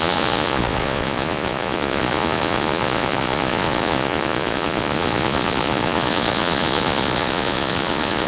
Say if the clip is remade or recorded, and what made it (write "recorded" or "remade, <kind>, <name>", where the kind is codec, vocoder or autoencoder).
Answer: remade, vocoder, Vocos